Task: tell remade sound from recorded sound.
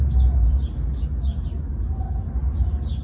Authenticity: recorded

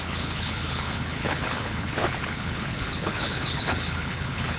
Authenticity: remade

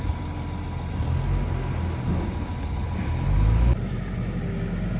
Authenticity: recorded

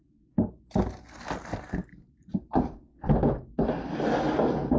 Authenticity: recorded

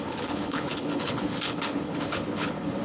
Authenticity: remade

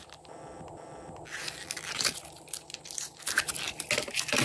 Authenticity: recorded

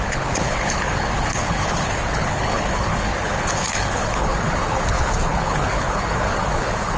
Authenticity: remade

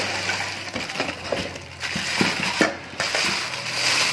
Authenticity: recorded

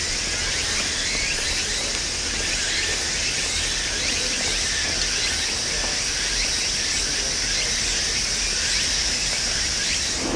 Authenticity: recorded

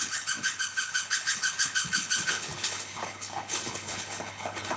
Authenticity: remade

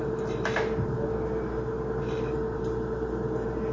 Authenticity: recorded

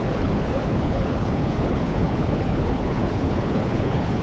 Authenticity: remade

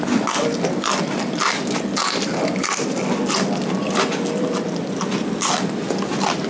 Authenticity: recorded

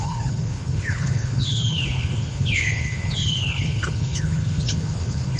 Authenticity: remade